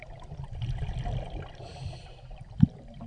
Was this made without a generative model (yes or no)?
yes